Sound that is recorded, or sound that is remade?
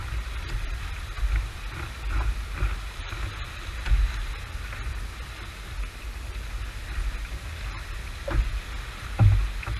recorded